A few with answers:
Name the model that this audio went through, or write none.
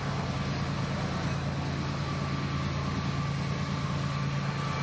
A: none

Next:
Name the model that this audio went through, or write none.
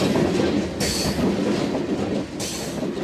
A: none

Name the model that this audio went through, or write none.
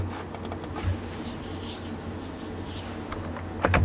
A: none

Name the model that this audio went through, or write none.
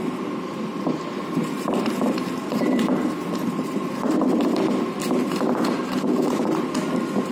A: none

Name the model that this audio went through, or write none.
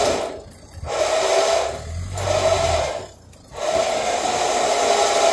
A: none